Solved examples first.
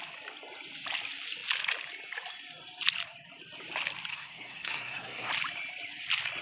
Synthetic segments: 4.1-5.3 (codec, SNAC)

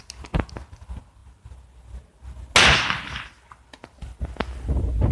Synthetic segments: none

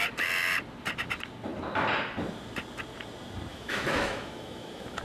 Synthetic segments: 3.5-5.0 (autoencoder, DAC-VAE)

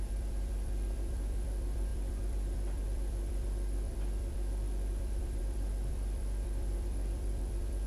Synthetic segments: 0.0-7.9 (vocoder, BigVGAN v2)

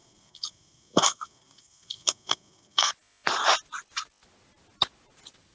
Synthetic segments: 0.0-2.9 (codec, SNAC)

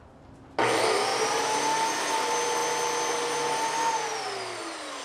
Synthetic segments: none